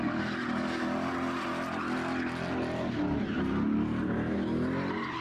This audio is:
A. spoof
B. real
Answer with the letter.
B